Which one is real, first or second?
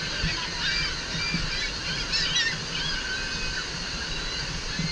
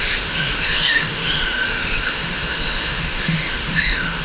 first